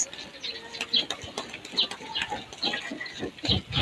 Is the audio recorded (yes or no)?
yes